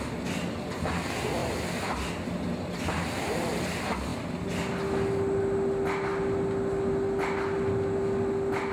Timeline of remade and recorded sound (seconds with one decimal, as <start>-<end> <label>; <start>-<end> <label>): 0.0-8.7 recorded